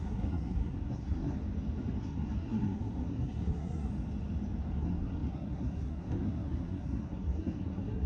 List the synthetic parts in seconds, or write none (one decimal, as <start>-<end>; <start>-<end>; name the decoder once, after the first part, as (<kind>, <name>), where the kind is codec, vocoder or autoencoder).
0.0-1.4 (codec, SNAC); 2.0-3.9; 4.7-8.1